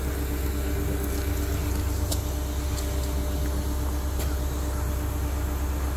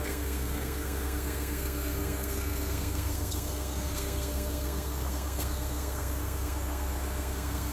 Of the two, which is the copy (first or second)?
second